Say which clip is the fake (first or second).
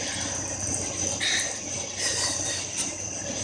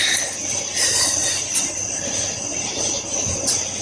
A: first